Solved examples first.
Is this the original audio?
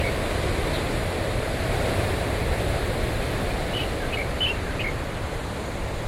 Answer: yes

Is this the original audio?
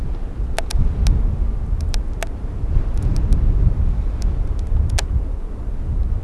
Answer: yes